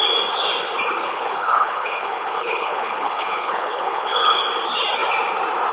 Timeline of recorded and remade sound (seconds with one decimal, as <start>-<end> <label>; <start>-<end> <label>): 0.0-1.0 recorded; 1.0-4.4 remade; 4.4-5.7 recorded